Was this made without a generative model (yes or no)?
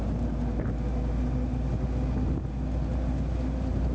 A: yes